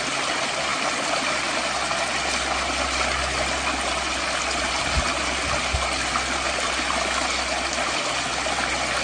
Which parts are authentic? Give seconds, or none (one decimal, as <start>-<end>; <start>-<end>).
0.0-9.0